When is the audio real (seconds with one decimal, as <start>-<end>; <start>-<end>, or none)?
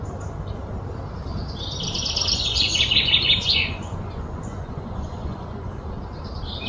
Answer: 0.0-2.2; 5.7-6.7